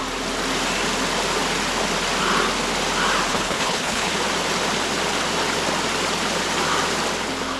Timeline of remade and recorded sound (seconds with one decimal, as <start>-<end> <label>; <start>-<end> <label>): 0.0-3.3 recorded; 3.3-4.1 remade; 4.1-7.6 recorded